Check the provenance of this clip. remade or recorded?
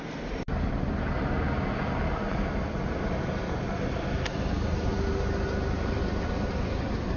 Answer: recorded